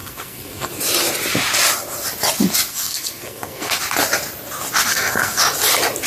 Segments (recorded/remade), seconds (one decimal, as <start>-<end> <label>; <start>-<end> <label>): 0.0-0.7 remade; 0.7-2.7 recorded; 2.7-3.8 remade; 3.8-4.9 recorded; 4.9-5.4 remade; 5.4-6.1 recorded